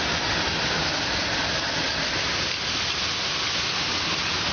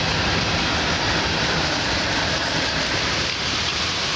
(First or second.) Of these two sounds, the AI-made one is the second